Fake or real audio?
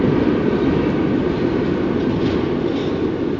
real